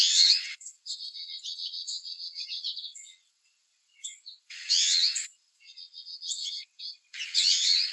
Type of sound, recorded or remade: remade